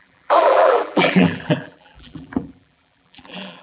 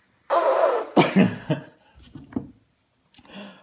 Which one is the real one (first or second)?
second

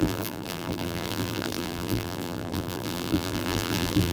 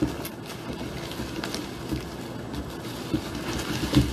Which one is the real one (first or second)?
second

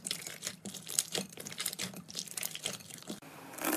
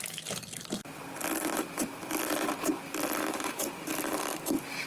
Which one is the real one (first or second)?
second